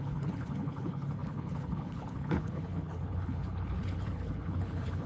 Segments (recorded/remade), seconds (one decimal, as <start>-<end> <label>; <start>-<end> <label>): 0.0-5.1 remade